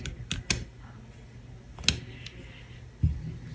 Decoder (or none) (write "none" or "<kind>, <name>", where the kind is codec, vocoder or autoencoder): none